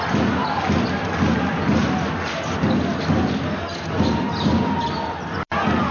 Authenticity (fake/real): real